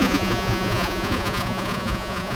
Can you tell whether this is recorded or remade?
remade